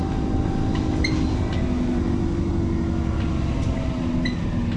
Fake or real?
real